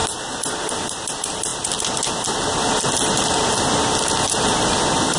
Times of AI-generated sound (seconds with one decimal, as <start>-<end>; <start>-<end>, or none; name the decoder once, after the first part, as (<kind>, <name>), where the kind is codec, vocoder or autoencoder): none